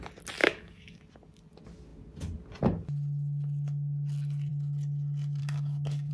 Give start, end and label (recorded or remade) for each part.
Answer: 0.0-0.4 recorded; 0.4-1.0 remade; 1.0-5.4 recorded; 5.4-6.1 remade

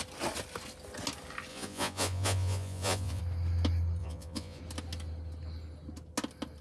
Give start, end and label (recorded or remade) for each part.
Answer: 0.0-1.5 recorded; 1.5-3.2 remade; 3.2-4.0 recorded; 4.0-4.6 remade; 4.6-6.6 recorded